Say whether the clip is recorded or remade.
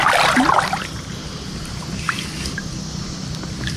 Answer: recorded